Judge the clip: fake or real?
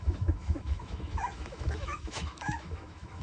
fake